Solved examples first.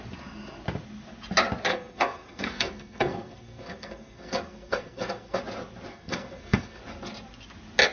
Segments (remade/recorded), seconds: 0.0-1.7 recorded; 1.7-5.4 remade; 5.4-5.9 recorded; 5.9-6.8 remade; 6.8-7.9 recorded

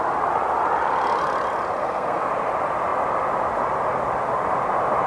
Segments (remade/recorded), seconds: 0.0-1.8 recorded; 1.8-2.3 remade; 2.3-5.1 recorded

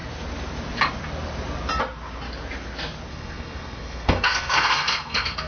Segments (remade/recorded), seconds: 0.0-3.1 recorded; 3.1-5.5 remade

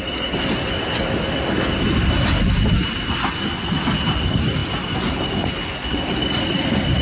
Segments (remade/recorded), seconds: 0.0-7.0 recorded

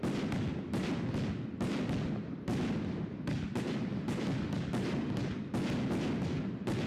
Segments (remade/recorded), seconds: 0.0-6.9 recorded

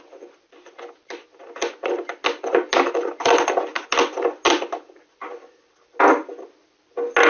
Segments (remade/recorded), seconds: 0.0-7.3 recorded

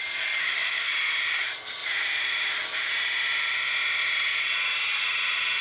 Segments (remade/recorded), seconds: 0.0-0.4 recorded; 0.4-0.9 remade; 0.9-5.6 recorded